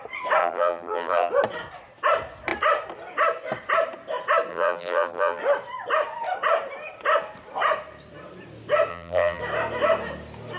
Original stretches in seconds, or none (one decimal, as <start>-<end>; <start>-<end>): 0.0-0.4; 1.3-4.5; 5.4-8.9; 9.4-10.6